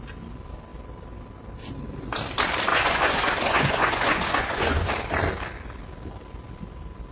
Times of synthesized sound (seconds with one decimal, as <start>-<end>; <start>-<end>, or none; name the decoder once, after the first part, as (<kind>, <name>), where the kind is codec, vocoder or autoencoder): 2.7-4.9 (vocoder, Vocos)